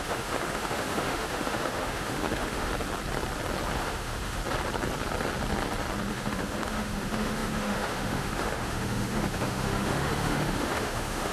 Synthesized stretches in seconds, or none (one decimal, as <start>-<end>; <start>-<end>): 0.0-2.7; 3.8-4.4; 6.1-11.3